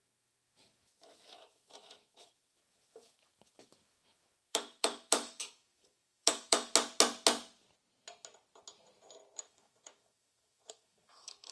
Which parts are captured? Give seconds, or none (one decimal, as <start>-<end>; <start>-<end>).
6.7-9.4